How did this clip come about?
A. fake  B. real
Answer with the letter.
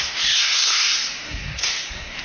A